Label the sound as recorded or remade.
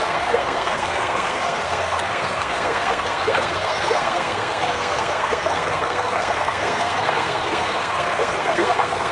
remade